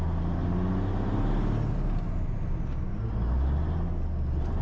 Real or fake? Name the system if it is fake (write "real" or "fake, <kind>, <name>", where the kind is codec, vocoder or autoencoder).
real